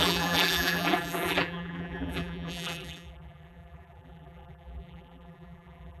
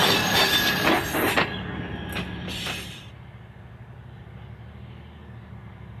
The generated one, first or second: first